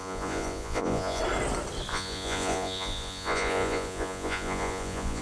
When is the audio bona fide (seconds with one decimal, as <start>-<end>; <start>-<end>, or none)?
1.2-1.9